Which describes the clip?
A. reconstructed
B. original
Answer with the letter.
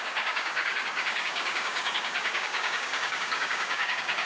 A